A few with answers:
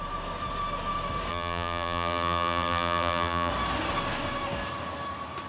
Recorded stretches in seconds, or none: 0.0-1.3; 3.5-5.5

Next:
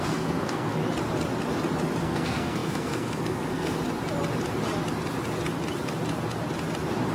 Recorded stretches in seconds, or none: 0.8-2.0; 3.8-7.1

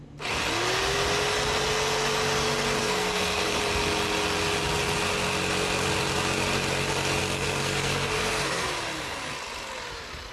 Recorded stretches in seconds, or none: 0.0-2.8; 3.6-7.2; 8.7-10.3